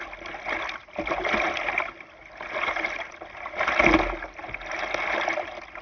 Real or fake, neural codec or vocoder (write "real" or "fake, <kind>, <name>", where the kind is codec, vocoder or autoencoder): real